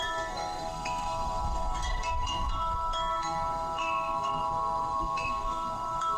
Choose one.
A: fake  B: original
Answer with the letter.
A